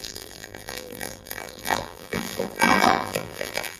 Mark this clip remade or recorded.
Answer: remade